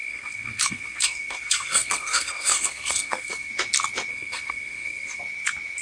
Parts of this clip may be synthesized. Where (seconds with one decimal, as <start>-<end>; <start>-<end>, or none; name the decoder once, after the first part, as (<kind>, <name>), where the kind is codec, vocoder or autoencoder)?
0.0-3.5 (codec, SNAC); 4.1-5.2